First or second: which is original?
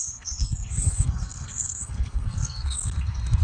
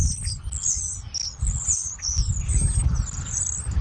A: second